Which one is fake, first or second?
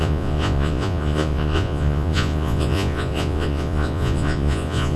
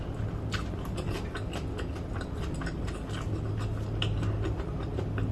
first